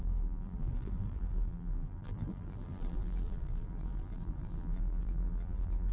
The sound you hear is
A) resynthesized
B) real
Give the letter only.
A